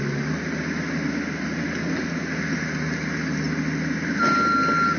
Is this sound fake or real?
real